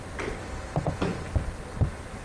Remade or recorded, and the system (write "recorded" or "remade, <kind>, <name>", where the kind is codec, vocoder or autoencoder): recorded